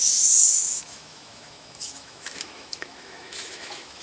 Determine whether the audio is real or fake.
fake